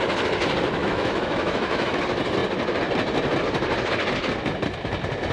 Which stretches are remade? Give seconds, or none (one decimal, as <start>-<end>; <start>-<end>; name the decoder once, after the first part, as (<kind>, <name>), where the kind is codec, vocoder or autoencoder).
0.8-2.0 (autoencoder, DAC-VAE)